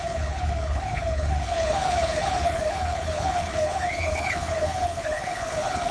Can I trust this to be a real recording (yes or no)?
no